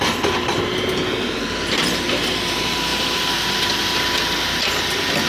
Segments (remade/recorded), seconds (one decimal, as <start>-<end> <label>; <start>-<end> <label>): 0.0-5.3 recorded